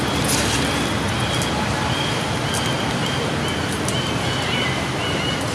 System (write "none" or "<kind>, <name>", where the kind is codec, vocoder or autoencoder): none